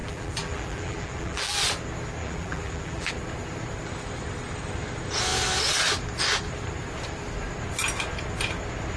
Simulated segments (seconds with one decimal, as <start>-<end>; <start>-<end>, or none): 0.0-1.6; 2.2-3.1